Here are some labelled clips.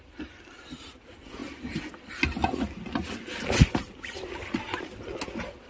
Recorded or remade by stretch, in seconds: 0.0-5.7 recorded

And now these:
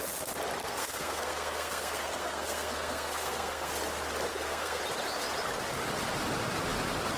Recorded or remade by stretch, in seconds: 0.0-0.6 recorded; 0.6-3.7 remade; 3.7-4.3 recorded; 4.3-4.8 remade; 4.8-7.2 recorded

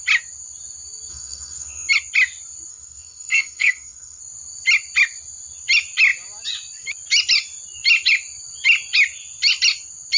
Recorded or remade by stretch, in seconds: 0.0-1.1 recorded; 1.1-1.9 remade; 1.9-2.7 recorded; 2.7-4.2 remade; 4.2-10.2 recorded

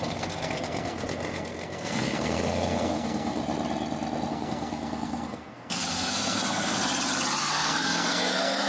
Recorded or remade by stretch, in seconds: 0.0-3.4 remade; 3.4-4.3 recorded; 4.3-6.8 remade; 6.8-7.4 recorded; 7.4-8.7 remade

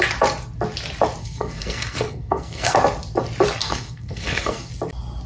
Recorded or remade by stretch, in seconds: 0.0-1.2 recorded; 1.2-2.8 remade; 2.8-3.6 recorded; 3.6-4.7 remade; 4.7-5.3 recorded

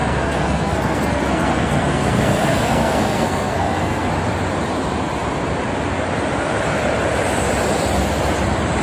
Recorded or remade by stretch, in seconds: 0.0-4.1 remade; 4.1-8.8 recorded

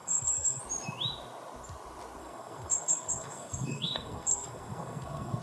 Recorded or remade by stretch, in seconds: 0.0-0.6 remade; 0.6-2.2 recorded; 2.2-5.4 remade

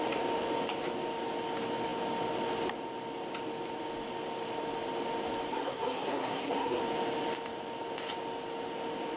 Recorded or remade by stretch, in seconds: 0.0-5.5 recorded; 5.5-6.8 remade; 6.8-9.2 recorded